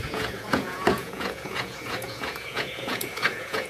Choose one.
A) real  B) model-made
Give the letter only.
B